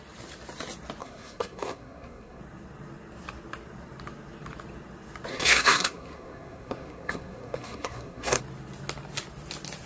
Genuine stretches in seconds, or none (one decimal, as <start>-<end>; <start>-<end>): 0.0-1.0; 2.4-5.3; 8.4-9.9